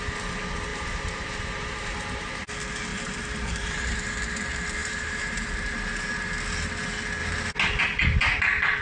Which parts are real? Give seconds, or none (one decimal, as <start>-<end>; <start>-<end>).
0.0-0.7; 2.5-2.9; 4.0-4.8; 6.1-8.8